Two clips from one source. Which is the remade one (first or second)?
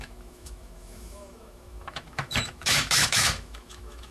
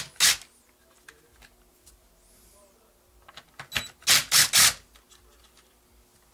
first